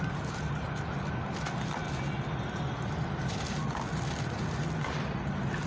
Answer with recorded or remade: recorded